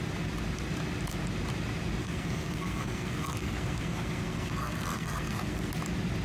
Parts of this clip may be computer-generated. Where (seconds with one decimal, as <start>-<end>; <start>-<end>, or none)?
2.0-5.7